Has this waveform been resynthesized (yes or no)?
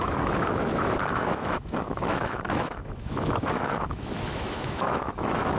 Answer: yes